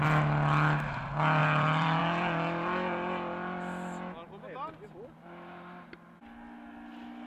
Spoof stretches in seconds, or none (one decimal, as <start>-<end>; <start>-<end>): 1.4-2.0

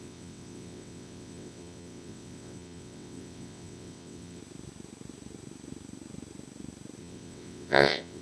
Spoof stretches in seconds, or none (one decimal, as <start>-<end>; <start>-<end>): 0.0-4.4; 7.0-8.2

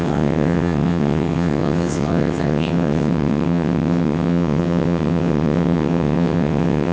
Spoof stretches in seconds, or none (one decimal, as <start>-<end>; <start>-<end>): 0.0-6.9